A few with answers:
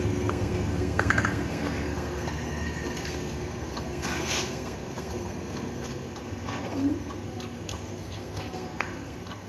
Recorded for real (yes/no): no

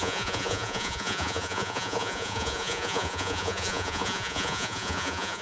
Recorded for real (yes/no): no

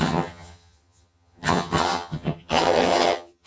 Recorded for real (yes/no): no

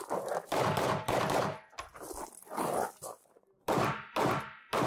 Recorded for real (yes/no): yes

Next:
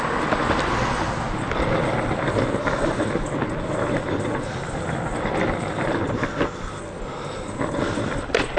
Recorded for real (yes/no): yes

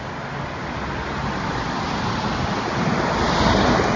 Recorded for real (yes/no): yes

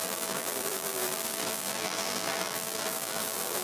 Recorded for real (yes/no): no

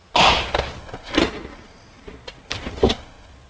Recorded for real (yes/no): yes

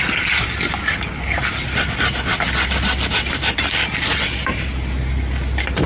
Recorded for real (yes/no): yes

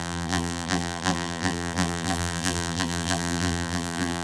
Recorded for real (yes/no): no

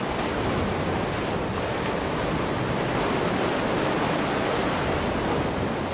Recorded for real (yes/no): yes